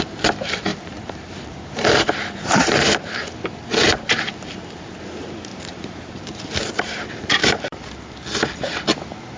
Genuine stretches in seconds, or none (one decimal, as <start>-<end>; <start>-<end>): 0.0-0.7; 3.0-5.5; 6.8-7.4; 7.9-9.4